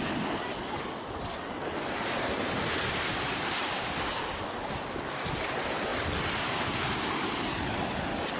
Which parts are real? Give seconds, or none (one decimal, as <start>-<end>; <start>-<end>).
0.0-3.8; 4.4-8.4